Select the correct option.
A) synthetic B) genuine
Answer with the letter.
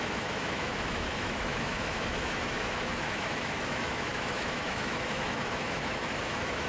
A